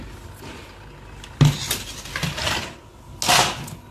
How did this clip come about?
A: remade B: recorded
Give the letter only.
B